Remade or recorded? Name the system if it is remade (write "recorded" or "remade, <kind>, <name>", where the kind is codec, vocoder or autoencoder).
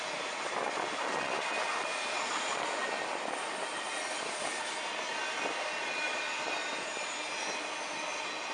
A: recorded